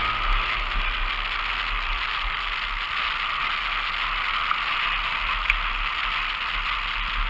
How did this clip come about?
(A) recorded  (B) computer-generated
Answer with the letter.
A